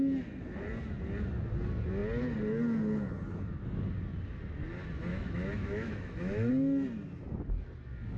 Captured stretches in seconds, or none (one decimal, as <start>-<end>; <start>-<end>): 0.0-5.1; 6.5-8.2